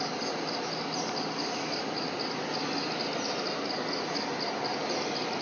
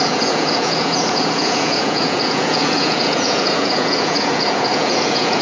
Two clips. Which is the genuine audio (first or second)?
first